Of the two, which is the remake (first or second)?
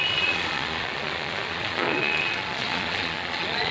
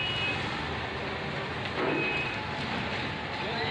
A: first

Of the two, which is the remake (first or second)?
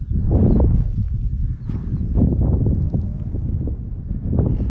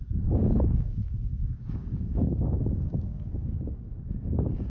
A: second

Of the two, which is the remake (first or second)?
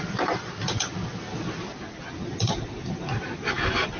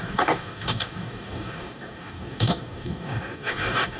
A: second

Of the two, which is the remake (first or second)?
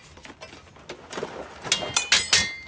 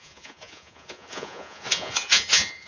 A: second